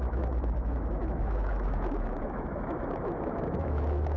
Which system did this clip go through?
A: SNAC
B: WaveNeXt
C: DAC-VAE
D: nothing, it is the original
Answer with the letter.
C